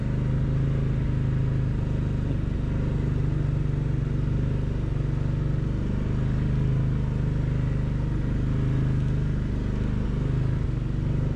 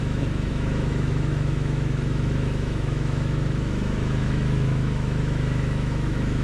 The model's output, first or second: second